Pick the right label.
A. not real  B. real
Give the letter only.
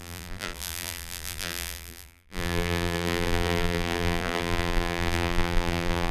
A